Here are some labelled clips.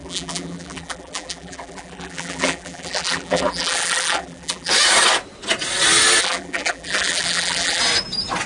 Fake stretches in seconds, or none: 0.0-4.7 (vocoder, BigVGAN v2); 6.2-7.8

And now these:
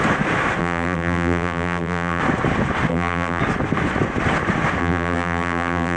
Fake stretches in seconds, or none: 0.6-2.2 (vocoder, BigVGAN v2); 2.9-3.4; 4.8-6.0

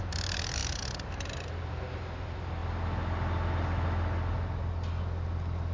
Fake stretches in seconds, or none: none

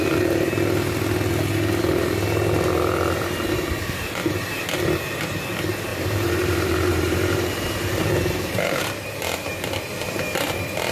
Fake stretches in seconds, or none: 5.9-8.8 (vocoder, BigVGAN v2)

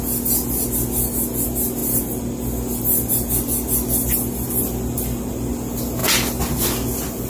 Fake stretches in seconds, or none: none